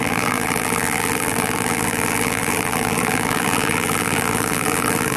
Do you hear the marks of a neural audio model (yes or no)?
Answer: yes